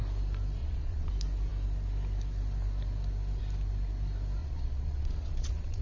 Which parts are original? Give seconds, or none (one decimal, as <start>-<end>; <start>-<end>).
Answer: 0.0-0.6; 1.1-4.4